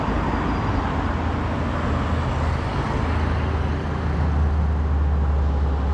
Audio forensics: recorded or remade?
recorded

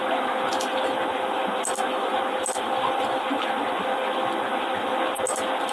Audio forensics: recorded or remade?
recorded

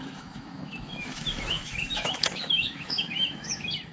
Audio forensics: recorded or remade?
remade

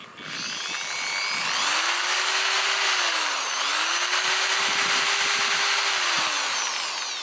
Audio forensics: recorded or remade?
recorded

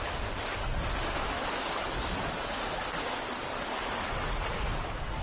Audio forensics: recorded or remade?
recorded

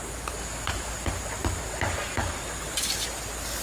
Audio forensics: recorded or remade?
recorded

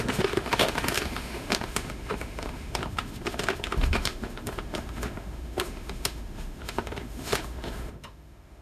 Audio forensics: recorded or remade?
remade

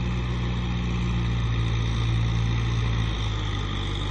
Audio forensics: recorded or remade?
recorded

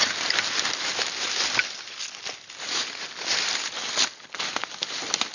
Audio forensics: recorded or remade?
recorded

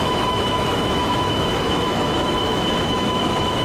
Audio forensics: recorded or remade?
remade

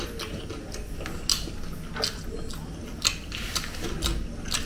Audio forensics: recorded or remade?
recorded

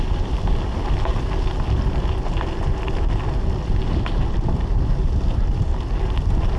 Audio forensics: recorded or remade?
recorded